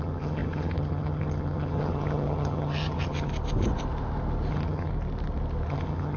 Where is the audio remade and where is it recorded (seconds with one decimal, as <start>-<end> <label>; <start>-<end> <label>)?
0.0-3.3 remade; 3.3-4.5 recorded; 4.5-4.9 remade; 4.9-5.7 recorded; 5.7-6.2 remade